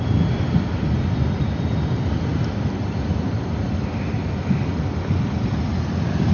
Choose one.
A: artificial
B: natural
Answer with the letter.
B